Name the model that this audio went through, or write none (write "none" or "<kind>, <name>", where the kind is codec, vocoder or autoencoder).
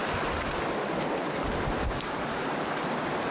none